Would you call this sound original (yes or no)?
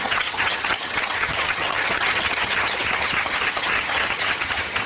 no